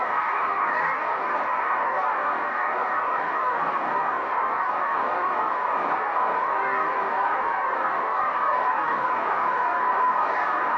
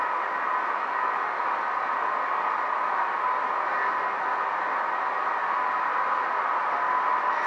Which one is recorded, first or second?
second